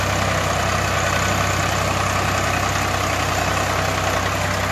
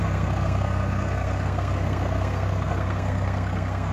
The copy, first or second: second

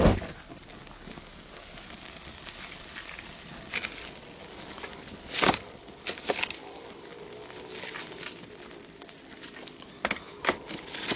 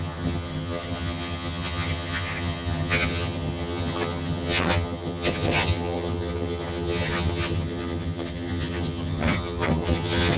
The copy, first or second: second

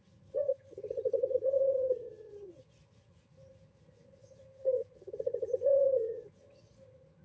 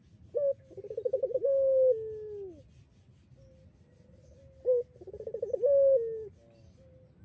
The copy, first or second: first